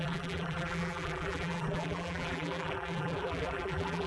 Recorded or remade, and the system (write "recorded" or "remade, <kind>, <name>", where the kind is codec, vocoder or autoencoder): remade, vocoder, BigVGAN v2